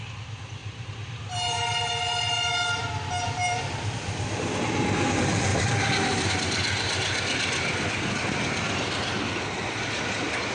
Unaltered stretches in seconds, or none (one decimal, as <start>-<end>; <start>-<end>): 0.0-0.6; 2.2-5.5; 6.3-10.5